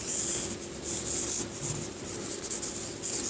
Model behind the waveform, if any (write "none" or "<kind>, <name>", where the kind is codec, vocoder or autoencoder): none